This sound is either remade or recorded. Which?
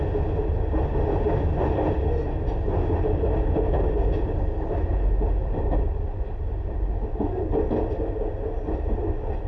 recorded